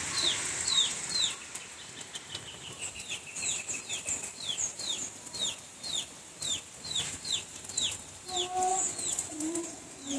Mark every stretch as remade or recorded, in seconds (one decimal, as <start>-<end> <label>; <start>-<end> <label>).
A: 0.0-8.7 recorded; 8.7-10.2 remade